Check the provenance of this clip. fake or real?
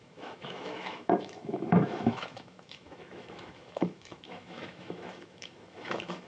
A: fake